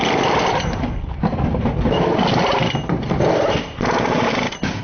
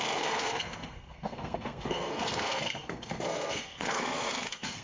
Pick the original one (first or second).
first